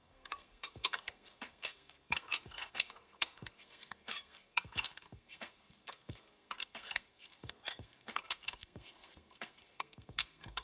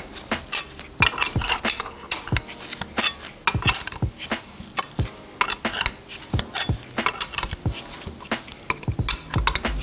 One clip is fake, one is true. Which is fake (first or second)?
first